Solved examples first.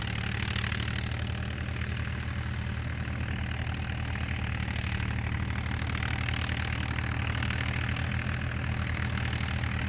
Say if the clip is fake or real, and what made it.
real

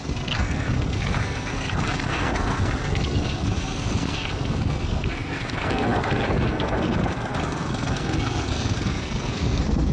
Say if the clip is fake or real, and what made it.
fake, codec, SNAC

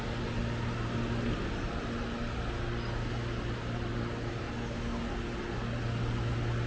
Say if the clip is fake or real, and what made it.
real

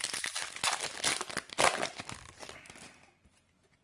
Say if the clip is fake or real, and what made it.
real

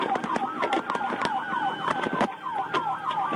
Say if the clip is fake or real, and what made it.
real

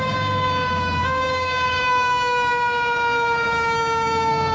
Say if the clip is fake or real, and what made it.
fake, codec, DAC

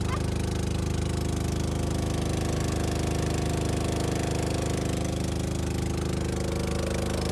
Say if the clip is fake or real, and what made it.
real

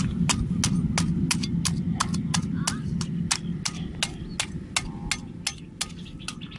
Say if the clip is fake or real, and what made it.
real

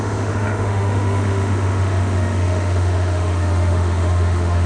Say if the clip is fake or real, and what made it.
fake, autoencoder, DAC-VAE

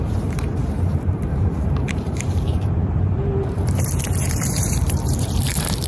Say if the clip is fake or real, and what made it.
fake, vocoder, BigVGAN v2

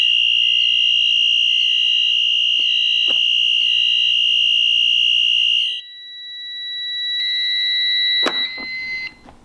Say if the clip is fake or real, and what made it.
real